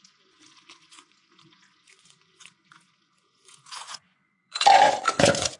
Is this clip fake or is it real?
fake